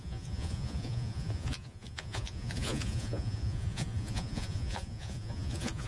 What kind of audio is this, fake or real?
fake